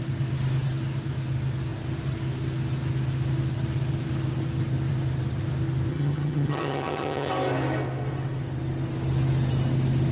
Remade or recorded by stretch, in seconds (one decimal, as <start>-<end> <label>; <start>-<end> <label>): 0.0-5.9 recorded; 5.9-7.3 remade; 7.3-10.1 recorded